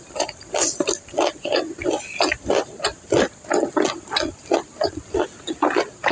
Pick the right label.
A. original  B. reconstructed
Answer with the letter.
A